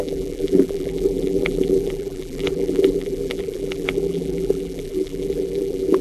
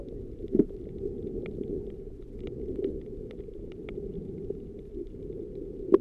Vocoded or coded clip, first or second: first